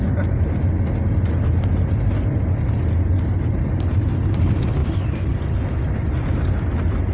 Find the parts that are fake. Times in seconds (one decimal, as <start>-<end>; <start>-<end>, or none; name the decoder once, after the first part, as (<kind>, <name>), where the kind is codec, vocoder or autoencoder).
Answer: 4.8-5.4 (vocoder, BigVGAN v2)